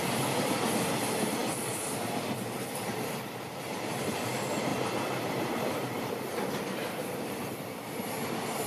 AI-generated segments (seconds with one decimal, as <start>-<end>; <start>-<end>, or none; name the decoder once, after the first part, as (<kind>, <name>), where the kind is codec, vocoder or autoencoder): 4.7-8.0 (vocoder, BigVGAN v2)